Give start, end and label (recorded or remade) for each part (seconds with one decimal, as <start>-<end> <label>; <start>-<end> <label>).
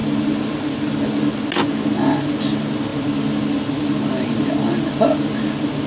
0.0-5.9 recorded